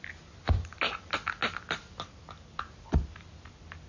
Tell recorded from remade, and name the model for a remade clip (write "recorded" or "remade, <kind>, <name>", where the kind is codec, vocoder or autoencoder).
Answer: recorded